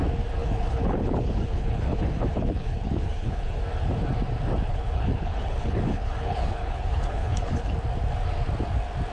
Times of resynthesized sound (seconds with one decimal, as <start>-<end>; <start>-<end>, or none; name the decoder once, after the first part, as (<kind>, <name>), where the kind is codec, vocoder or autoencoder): 0.4-3.6 (codec, HILCodec); 4.7-7.7